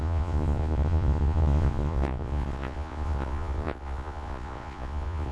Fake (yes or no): yes